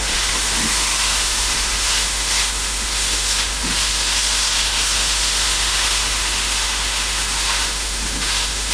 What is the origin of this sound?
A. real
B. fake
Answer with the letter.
B